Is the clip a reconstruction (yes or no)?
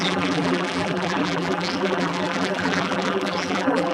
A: yes